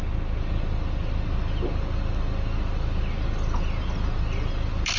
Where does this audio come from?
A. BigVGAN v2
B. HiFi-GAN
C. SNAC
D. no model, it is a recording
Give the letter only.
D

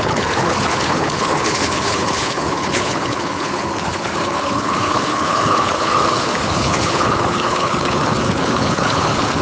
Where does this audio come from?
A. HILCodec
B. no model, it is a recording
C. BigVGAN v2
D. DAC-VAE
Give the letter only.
A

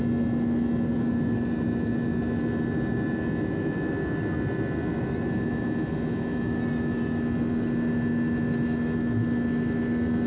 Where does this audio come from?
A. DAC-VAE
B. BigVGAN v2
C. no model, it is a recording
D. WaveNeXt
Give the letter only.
C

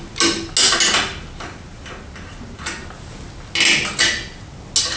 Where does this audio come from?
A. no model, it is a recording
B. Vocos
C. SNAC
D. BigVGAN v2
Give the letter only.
A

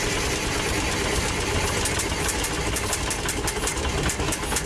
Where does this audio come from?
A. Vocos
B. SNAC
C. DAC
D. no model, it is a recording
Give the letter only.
D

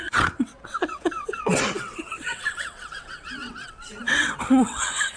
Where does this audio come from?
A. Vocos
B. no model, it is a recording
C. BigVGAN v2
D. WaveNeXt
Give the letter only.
D